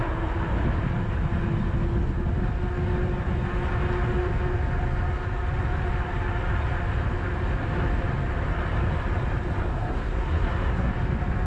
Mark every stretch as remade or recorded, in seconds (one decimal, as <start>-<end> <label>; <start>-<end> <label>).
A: 0.0-9.7 recorded; 9.7-10.9 remade; 10.9-11.5 recorded